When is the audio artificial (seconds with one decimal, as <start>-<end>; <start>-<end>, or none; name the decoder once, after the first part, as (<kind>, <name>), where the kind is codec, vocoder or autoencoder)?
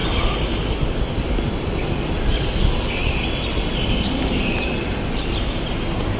none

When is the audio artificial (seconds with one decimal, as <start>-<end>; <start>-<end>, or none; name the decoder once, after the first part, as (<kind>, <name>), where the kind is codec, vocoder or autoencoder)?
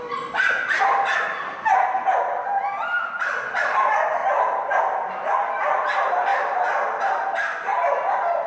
none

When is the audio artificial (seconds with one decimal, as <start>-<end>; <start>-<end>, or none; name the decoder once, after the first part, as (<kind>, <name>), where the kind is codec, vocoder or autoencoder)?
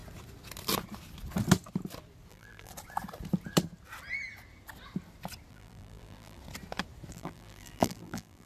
2.3-2.7 (vocoder, BigVGAN v2); 5.5-6.4; 7.1-8.5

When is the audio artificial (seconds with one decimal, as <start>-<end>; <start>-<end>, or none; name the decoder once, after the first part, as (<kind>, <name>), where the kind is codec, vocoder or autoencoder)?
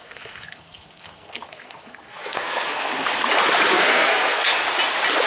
0.0-2.9 (codec, SNAC); 3.7-4.6